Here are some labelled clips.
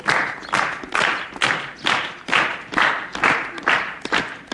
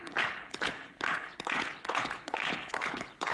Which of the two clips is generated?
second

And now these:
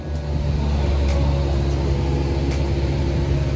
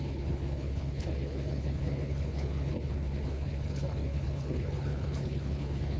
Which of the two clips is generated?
second